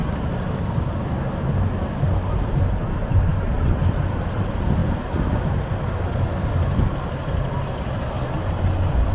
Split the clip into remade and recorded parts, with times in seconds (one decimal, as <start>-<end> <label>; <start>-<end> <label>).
0.0-9.1 recorded